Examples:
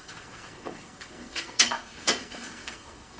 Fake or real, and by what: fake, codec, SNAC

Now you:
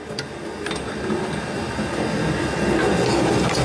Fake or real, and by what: real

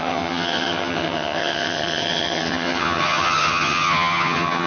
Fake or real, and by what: fake, vocoder, HiFi-GAN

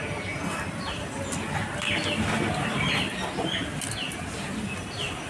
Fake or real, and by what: real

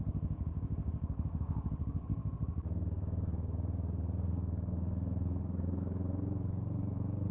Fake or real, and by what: fake, codec, DAC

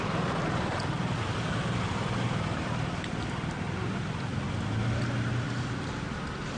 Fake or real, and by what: real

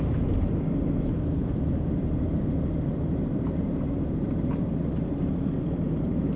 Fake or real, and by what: fake, vocoder, BigVGAN v2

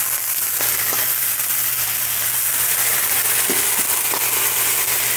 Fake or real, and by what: real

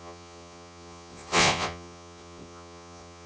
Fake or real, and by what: fake, vocoder, Vocos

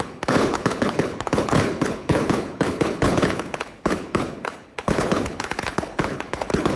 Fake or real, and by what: fake, codec, HILCodec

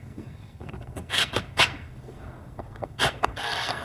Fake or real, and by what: fake, codec, SNAC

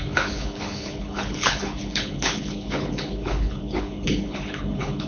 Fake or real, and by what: fake, codec, HILCodec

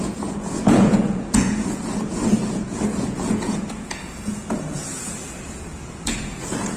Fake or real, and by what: fake, vocoder, Vocos